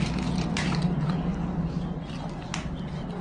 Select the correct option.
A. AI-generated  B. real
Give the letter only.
B